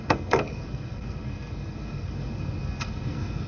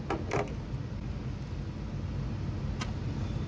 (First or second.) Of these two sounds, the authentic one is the second